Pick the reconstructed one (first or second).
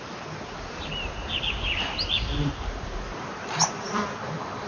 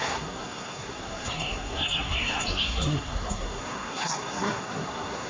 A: second